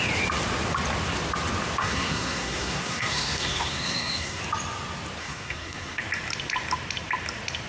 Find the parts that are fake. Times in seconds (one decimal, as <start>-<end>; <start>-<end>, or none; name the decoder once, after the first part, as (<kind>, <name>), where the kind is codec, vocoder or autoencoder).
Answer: 1.8-4.4 (codec, SNAC); 5.2-6.0